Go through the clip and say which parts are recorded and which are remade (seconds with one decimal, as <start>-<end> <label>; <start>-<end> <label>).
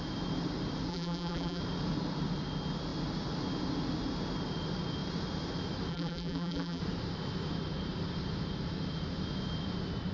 0.0-0.9 recorded; 0.9-1.6 remade; 1.6-5.9 recorded; 5.9-6.8 remade; 6.8-10.1 recorded